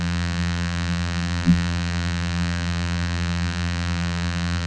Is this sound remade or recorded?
remade